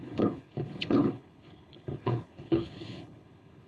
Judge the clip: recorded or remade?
remade